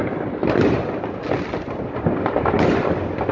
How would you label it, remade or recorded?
recorded